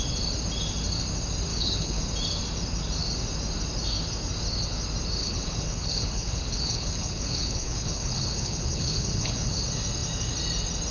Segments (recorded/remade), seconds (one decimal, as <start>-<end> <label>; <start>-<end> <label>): 0.0-1.5 recorded; 1.5-2.0 remade; 2.0-5.2 recorded; 5.2-9.6 remade; 9.6-10.9 recorded